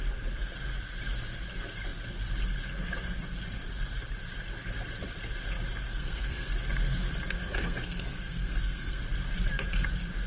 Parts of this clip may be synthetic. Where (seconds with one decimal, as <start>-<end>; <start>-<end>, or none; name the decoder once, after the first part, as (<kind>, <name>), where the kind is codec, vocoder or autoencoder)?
5.9-6.5 (codec, SNAC); 7.4-9.0